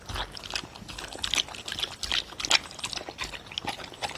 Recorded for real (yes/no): yes